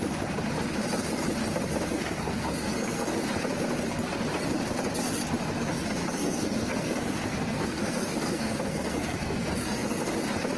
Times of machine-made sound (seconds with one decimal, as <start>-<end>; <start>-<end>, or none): 1.9-3.1; 6.0-10.0